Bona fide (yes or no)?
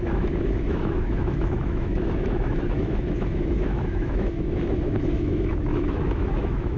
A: no